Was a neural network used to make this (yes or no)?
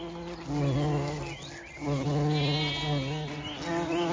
no